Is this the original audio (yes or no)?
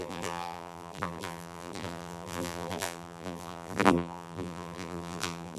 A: no